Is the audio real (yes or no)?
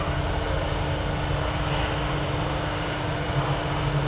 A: yes